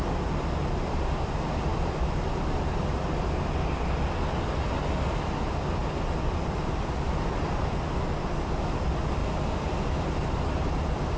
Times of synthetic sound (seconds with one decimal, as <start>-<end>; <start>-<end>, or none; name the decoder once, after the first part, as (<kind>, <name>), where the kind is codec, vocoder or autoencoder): none